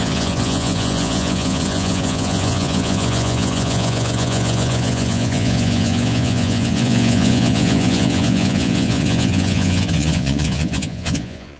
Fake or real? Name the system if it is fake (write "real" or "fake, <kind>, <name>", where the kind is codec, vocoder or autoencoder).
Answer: fake, vocoder, Vocos